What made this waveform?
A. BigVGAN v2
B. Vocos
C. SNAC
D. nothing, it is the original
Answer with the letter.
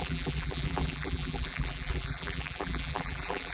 A